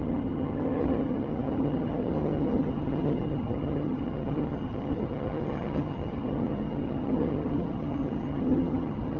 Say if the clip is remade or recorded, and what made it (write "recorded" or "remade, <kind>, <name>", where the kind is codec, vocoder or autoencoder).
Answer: remade, vocoder, HiFi-GAN